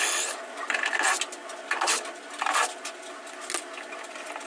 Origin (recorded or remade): recorded